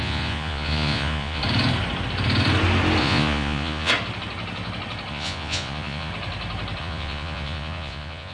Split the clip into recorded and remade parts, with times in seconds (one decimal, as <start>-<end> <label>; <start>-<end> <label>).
0.0-1.4 remade; 1.4-3.0 recorded; 3.0-3.9 remade; 3.9-5.1 recorded; 5.1-6.1 remade; 6.1-6.8 recorded; 6.8-8.3 remade